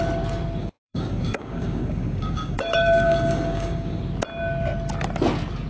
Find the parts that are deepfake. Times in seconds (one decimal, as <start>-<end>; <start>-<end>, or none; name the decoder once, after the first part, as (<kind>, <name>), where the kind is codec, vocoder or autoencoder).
0.6-4.0 (codec, DAC)